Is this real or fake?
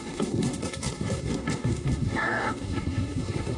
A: fake